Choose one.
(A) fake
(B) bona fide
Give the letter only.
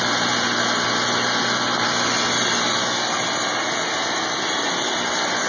B